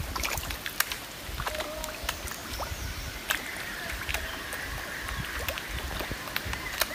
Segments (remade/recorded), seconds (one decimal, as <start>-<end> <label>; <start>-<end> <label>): 0.0-2.4 recorded; 2.4-4.1 remade; 4.1-6.9 recorded